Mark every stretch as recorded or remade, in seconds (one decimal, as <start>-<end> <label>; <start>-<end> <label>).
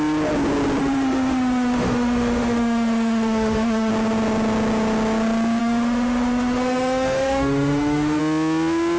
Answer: 0.0-0.8 recorded; 0.8-3.9 remade; 3.9-5.6 recorded; 5.6-8.2 remade; 8.2-9.0 recorded